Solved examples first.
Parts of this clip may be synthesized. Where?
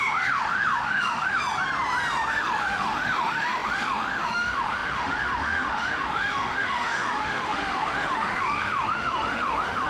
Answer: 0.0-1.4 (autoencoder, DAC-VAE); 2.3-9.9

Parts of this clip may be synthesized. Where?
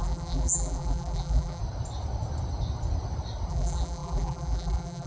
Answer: 0.0-1.6 (vocoder, BigVGAN v2); 3.5-5.1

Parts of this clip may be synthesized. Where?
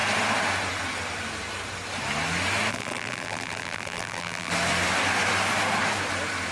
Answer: 2.7-4.5 (vocoder, BigVGAN v2)